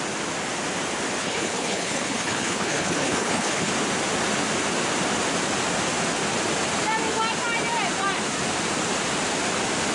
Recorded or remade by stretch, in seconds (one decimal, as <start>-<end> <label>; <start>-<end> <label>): 0.0-1.2 recorded; 1.2-3.7 remade; 3.7-9.9 recorded